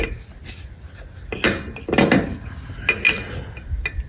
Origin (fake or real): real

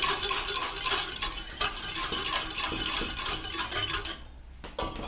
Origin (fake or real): real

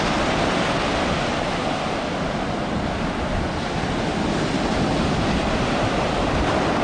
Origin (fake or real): real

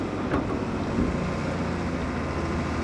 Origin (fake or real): real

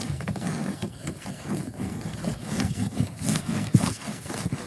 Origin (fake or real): fake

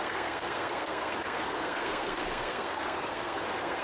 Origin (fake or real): fake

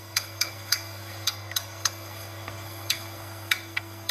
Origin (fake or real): fake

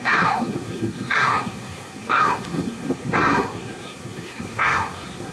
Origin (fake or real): fake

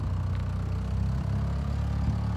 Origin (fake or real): real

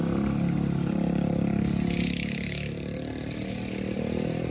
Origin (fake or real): real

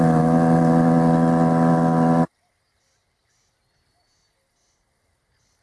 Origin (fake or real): real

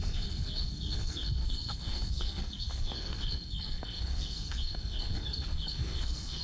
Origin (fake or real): fake